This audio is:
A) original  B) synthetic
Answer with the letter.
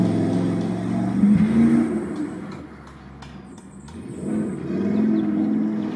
A